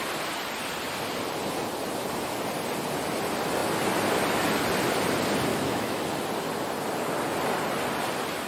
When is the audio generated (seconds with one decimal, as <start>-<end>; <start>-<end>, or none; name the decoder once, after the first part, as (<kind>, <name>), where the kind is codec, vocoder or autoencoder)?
5.5-6.0 (autoencoder, DAC-VAE)